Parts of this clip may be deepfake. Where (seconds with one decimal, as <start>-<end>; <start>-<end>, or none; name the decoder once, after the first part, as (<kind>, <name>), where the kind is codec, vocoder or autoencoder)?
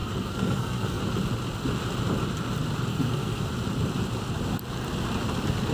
0.0-1.0 (codec, SNAC); 2.9-3.5